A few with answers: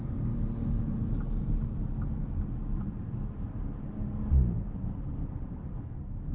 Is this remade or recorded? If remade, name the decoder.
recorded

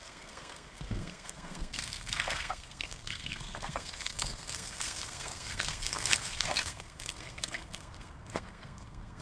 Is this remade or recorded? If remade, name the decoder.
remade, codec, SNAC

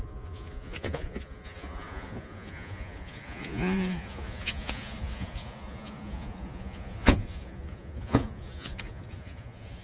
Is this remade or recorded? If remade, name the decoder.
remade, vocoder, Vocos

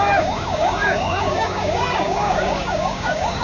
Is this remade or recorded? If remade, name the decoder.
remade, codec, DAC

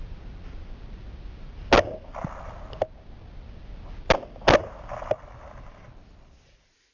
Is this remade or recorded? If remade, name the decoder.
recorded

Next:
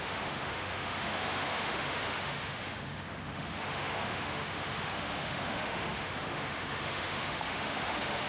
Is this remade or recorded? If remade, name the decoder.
remade, autoencoder, DAC-VAE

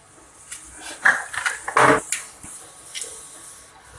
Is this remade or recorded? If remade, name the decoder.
recorded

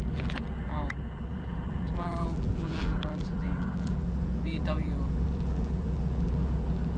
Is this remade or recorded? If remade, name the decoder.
remade, vocoder, BigVGAN v2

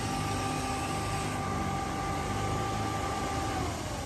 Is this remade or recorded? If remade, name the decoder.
recorded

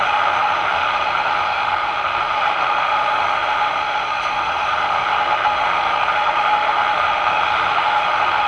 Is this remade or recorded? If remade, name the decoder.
remade, autoencoder, DAC-VAE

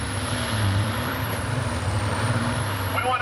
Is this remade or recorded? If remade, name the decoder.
remade, vocoder, BigVGAN v2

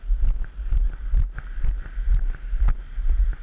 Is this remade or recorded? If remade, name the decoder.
recorded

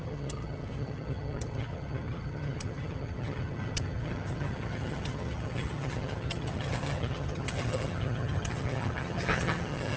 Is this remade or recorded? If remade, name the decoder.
remade, vocoder, HiFi-GAN